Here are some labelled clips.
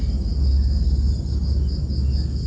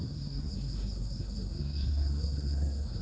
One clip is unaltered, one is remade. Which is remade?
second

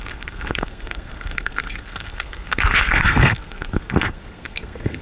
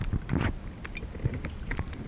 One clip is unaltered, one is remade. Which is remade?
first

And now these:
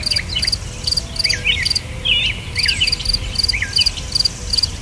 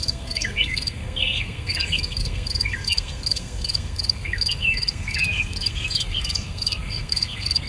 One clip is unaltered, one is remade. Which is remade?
second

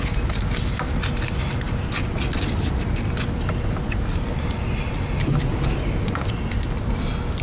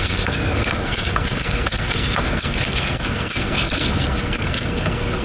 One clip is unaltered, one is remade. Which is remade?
second